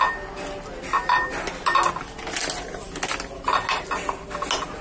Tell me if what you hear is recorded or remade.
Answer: recorded